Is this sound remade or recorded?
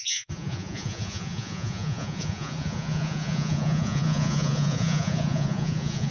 remade